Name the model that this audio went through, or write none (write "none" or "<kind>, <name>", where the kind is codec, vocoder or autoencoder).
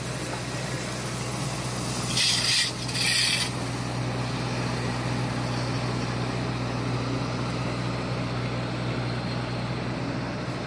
none